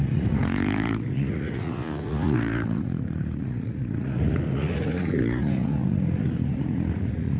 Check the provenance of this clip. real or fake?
fake